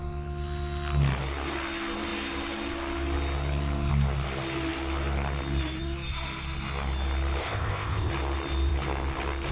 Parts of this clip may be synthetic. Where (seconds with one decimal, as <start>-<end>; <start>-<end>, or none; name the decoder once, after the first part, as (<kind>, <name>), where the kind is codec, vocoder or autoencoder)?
7.4-8.1 (codec, ZipCodec)